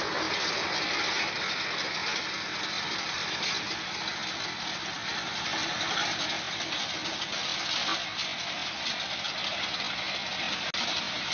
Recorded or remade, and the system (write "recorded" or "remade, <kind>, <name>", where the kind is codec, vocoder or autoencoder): recorded